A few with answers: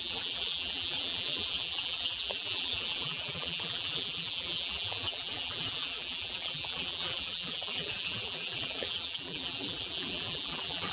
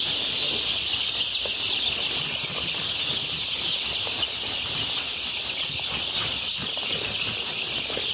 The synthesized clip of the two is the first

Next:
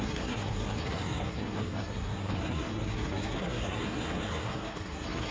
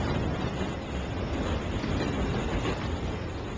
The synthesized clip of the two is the first